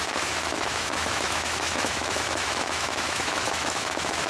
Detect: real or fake fake